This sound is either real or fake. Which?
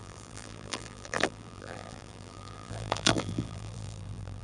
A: fake